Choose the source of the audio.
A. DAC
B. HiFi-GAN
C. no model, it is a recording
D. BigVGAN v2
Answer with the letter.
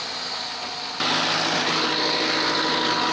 C